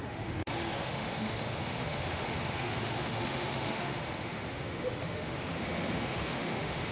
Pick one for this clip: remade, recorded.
remade